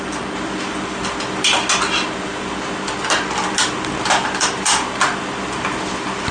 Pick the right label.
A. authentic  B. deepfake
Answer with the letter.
A